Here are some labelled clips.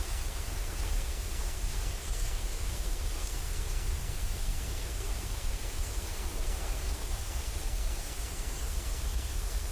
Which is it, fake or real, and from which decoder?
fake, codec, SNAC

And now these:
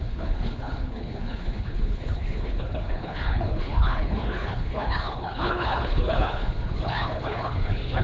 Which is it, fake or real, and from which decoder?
fake, codec, HILCodec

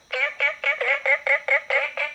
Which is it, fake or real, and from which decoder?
real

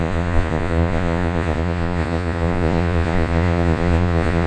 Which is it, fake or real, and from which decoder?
fake, vocoder, Vocos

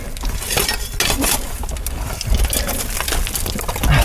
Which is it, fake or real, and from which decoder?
real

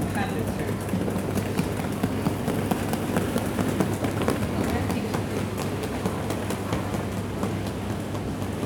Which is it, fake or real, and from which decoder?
real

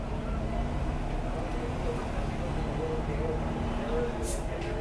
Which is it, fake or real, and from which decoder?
real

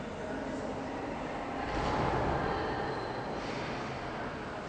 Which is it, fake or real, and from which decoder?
real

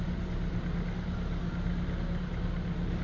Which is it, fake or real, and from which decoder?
real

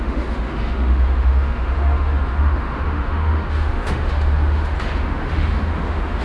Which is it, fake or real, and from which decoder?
fake, autoencoder, DAC-VAE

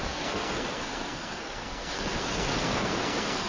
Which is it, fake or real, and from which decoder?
fake, codec, SNAC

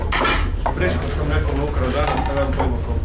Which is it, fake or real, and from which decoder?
real